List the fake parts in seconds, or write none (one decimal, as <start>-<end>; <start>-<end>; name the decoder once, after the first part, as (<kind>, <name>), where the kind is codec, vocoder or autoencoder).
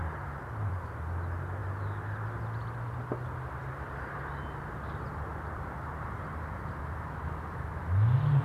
5.3-7.7 (vocoder, BigVGAN v2)